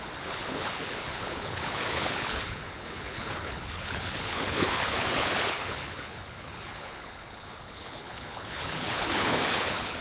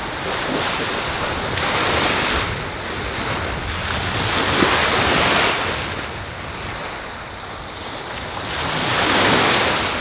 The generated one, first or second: first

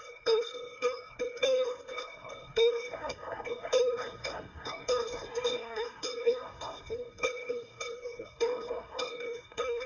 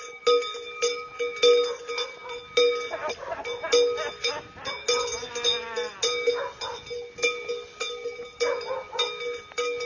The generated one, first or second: first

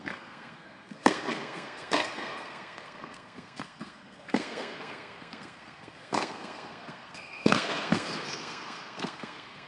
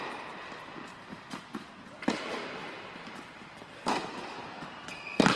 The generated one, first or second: first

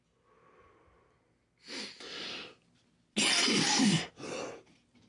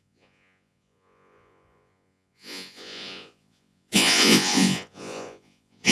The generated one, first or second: second